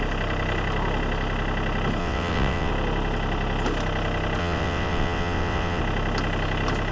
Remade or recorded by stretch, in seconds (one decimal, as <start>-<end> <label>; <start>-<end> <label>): 0.0-2.0 recorded; 2.0-2.7 remade; 2.7-4.4 recorded; 4.4-5.8 remade; 5.8-6.9 recorded